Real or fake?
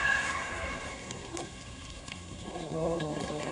fake